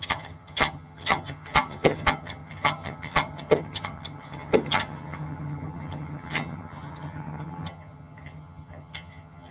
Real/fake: fake